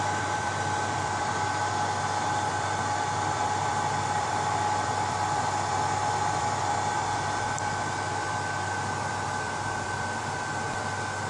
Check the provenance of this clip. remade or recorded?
remade